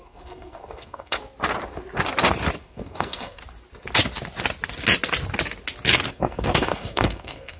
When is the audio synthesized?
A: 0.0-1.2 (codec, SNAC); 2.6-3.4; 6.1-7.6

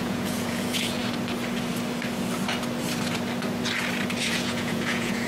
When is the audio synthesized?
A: 0.0-1.0 (vocoder, Vocos); 4.2-5.3

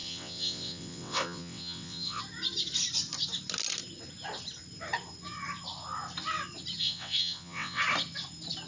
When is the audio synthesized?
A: 0.0-2.2 (vocoder, WaveNeXt); 6.8-7.8

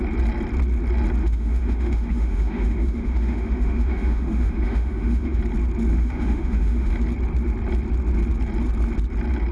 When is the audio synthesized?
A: 1.2-5.4 (autoencoder, DAC-VAE); 5.9-6.9

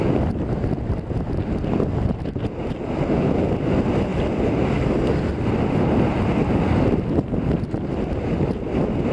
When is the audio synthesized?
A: none

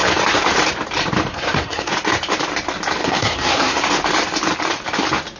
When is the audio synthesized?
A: 1.3-1.9 (codec, SNAC); 3.0-3.8